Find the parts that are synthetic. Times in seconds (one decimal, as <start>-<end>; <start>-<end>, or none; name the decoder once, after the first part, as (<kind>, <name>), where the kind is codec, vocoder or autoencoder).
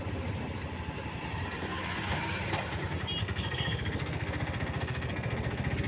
3.2-5.9 (codec, SNAC)